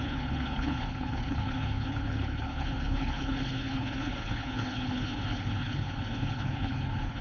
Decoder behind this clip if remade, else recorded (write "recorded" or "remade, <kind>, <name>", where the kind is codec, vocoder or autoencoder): remade, codec, HILCodec